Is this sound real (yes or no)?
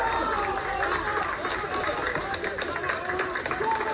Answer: yes